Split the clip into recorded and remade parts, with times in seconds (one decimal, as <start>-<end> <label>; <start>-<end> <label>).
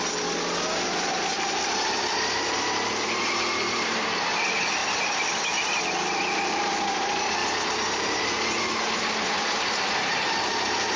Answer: 0.0-11.0 recorded